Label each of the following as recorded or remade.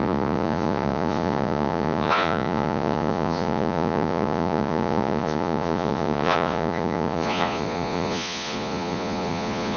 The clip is remade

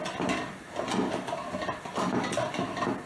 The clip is recorded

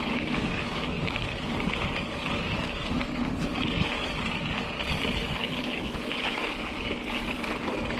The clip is remade